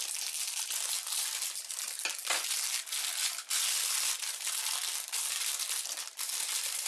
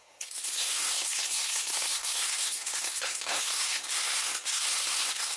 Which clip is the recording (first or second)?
first